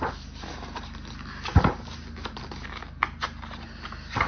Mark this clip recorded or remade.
recorded